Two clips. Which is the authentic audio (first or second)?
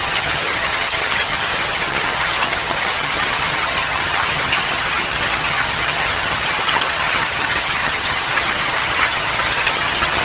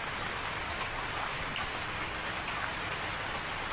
second